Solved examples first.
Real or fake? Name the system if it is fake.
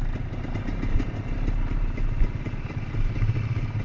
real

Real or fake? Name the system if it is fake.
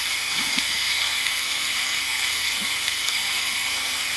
fake, codec, SNAC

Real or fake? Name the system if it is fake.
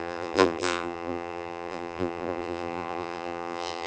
fake, vocoder, BigVGAN v2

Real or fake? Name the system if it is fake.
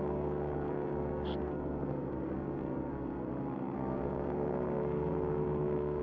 fake, codec, SNAC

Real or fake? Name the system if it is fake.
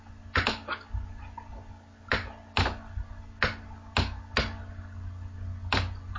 real